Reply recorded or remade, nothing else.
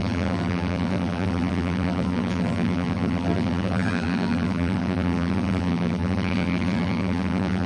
remade